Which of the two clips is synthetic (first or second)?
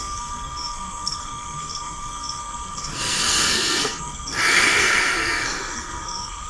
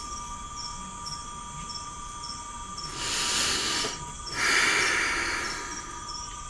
first